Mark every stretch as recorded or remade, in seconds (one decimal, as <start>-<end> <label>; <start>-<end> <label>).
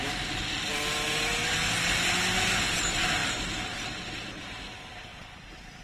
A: 0.0-3.2 recorded; 3.2-4.4 remade; 4.4-5.8 recorded